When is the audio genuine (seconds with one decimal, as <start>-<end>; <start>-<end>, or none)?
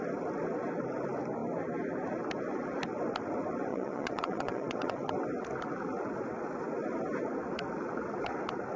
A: 0.0-3.7; 5.1-8.8